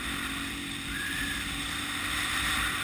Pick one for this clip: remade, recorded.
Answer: remade